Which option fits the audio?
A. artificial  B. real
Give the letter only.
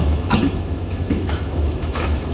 A